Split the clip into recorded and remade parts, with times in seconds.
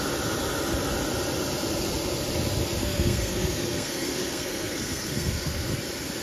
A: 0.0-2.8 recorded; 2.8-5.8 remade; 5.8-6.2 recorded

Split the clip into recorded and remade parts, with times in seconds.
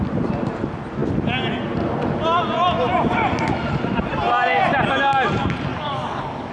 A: 0.0-5.7 recorded; 5.7-6.5 remade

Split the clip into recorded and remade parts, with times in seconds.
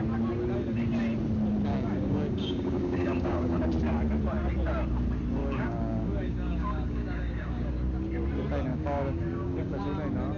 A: 0.0-1.7 recorded; 1.7-3.6 remade; 3.6-5.4 recorded; 5.4-7.7 remade; 7.7-8.7 recorded; 8.7-9.8 remade; 9.8-10.4 recorded